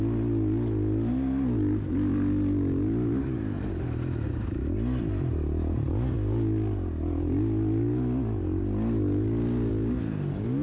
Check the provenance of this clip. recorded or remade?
recorded